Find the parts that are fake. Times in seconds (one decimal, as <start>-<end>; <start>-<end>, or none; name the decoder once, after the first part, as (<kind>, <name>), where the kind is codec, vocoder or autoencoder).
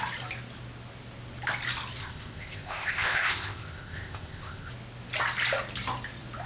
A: 2.0-4.7 (codec, ZipCodec)